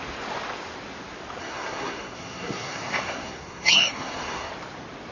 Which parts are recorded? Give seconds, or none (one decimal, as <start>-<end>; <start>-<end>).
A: 0.0-1.4; 4.5-5.1